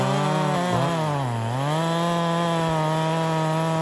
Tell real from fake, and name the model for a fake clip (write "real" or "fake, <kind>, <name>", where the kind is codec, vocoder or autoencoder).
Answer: real